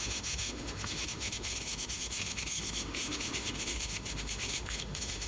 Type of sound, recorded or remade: remade